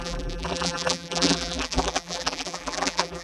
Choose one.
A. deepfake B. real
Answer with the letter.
A